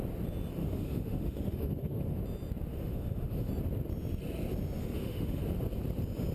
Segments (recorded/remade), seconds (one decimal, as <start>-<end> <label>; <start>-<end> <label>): 0.0-0.6 recorded; 0.6-2.2 remade; 2.2-2.7 recorded; 2.7-3.5 remade; 3.5-4.8 recorded; 4.8-5.4 remade; 5.4-6.3 recorded